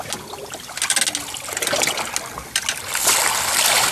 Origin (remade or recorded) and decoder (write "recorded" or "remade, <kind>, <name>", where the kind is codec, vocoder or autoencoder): recorded